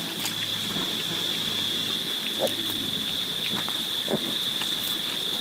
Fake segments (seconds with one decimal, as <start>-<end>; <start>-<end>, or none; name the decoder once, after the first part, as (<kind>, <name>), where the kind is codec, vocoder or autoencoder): 2.5-3.6 (vocoder, BigVGAN v2)